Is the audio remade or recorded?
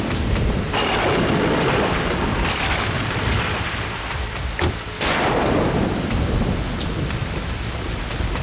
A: remade